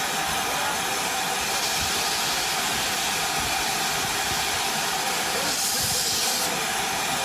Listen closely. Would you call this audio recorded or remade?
recorded